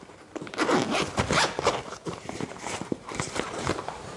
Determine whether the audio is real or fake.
fake